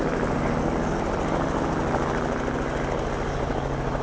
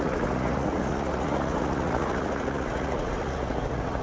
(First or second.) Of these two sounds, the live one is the first